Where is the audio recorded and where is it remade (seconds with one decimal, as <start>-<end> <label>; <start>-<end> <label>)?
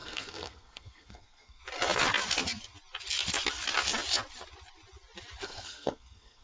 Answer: 0.0-1.6 remade; 1.6-5.4 recorded; 5.4-6.4 remade